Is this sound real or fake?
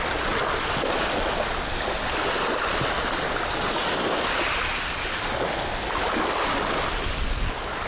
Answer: real